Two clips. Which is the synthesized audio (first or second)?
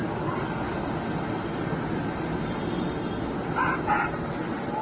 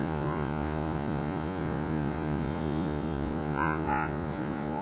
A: second